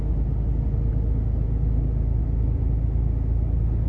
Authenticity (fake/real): real